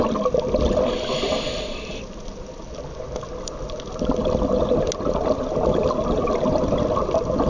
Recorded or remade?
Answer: recorded